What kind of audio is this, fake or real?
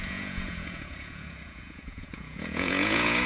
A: fake